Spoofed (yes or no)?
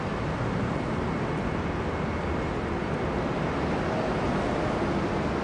no